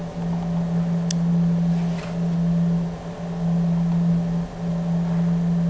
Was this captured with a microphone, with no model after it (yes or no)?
yes